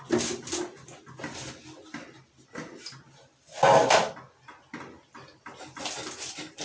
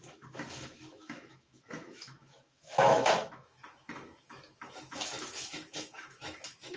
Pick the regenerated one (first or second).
second